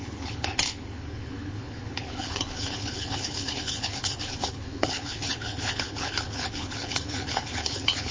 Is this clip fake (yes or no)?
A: yes